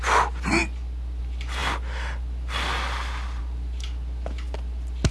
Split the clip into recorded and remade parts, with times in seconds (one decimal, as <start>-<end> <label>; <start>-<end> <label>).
0.0-5.1 recorded